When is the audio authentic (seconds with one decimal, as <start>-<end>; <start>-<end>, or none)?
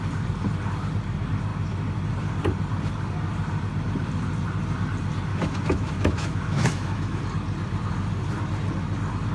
0.0-5.3; 7.2-9.3